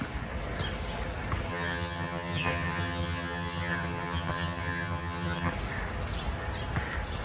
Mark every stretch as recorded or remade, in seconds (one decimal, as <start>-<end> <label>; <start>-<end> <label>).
0.0-1.5 recorded; 1.5-5.5 remade; 5.5-7.2 recorded